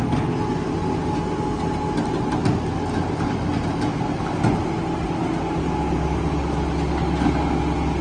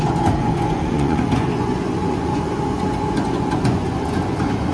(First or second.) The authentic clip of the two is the first